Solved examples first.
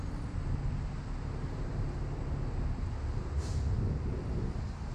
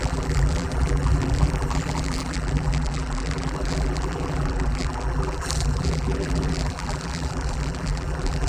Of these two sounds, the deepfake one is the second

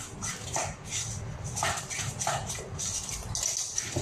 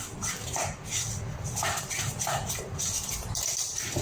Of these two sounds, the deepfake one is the second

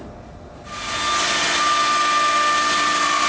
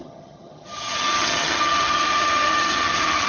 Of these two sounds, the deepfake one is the second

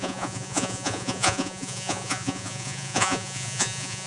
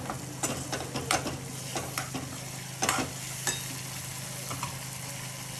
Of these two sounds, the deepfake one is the first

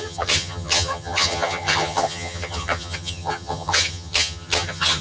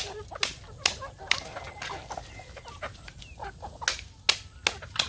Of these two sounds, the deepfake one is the first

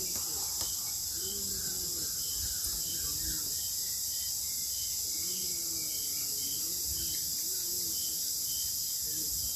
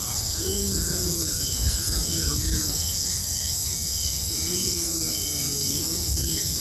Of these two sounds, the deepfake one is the second